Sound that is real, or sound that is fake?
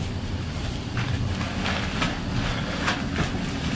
real